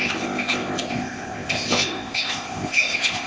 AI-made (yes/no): yes